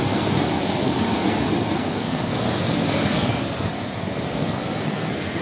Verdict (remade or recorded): remade